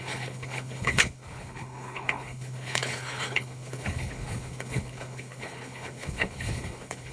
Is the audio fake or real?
fake